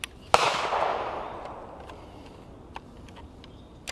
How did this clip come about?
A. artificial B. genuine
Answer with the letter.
B